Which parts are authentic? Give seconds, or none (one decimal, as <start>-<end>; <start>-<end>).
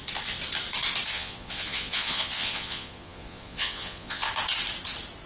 0.0-1.1; 4.3-5.3